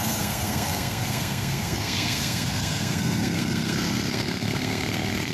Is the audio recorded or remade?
remade